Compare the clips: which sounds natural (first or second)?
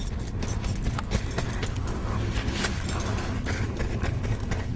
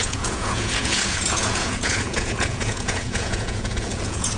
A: first